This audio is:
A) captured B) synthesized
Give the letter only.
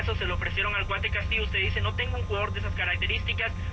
A